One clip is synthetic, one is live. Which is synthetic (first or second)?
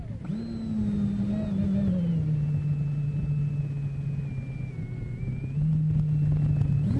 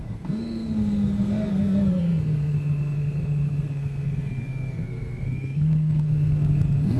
second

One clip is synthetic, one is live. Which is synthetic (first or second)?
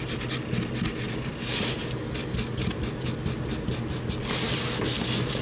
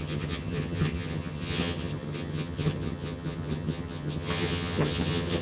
second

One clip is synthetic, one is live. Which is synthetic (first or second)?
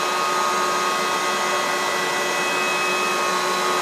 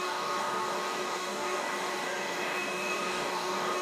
second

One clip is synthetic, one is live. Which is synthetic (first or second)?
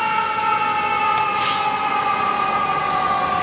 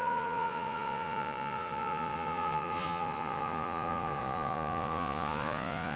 second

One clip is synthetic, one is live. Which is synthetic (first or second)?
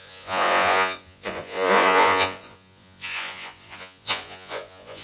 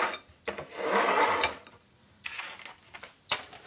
first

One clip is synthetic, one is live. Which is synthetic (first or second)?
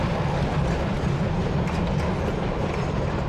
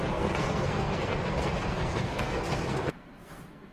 second